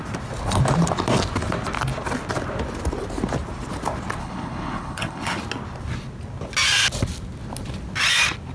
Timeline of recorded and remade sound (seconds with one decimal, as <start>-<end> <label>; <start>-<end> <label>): 0.0-4.2 recorded; 4.2-5.4 remade; 5.4-8.5 recorded